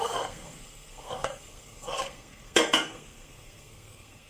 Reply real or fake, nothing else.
fake